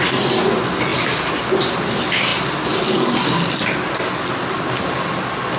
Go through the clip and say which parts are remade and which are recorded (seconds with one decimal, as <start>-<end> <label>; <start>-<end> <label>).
0.0-5.6 recorded